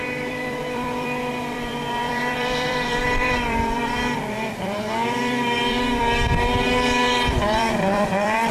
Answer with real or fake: fake